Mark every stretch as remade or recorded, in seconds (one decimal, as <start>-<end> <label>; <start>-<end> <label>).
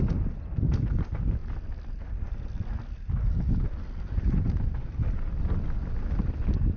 0.0-6.8 recorded